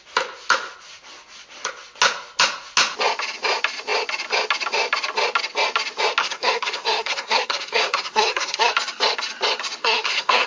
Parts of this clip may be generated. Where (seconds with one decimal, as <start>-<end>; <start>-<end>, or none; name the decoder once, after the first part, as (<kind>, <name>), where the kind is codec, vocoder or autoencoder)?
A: 6.2-8.7 (codec, SNAC); 9.8-10.5